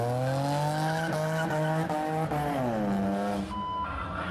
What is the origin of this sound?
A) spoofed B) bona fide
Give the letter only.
B